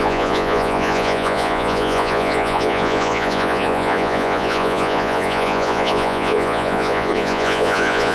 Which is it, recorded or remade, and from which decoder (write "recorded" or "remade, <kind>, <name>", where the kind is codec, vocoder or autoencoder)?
remade, vocoder, Vocos